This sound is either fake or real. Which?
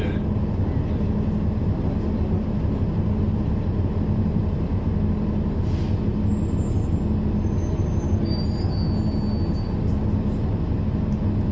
real